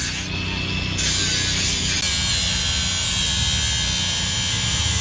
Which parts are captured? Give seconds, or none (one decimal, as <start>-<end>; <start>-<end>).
0.0-5.0